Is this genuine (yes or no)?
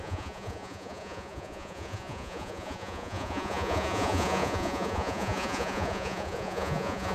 no